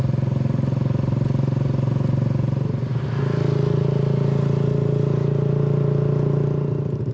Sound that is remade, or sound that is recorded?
recorded